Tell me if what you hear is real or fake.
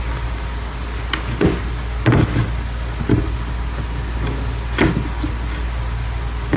real